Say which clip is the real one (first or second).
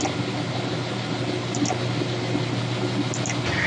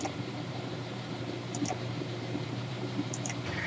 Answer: first